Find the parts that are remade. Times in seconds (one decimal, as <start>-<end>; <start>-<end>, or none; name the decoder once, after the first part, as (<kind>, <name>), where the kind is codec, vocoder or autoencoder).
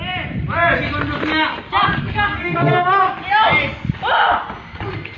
2.0-3.1 (codec, SNAC)